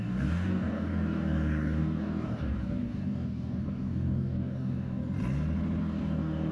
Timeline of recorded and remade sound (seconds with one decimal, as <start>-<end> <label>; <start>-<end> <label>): 0.0-5.0 remade; 5.0-5.8 recorded; 5.8-6.5 remade